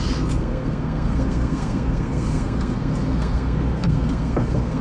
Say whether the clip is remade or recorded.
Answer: remade